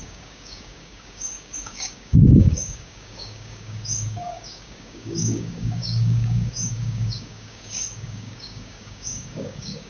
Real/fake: fake